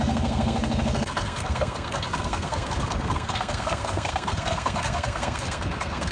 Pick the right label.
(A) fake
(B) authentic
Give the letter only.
A